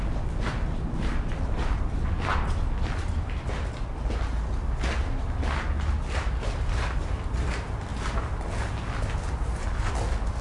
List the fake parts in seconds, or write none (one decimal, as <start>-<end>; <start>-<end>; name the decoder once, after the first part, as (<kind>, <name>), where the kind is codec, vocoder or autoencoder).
none